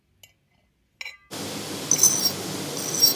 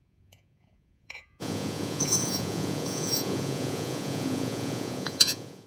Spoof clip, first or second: second